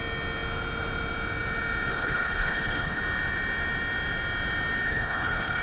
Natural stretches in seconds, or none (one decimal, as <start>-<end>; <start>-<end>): 0.0-1.9; 3.0-4.9